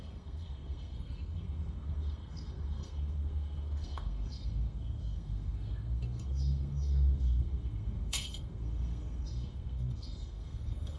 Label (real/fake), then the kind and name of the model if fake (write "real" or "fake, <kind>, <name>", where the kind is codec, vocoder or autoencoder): fake, codec, SNAC